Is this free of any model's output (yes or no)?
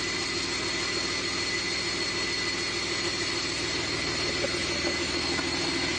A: yes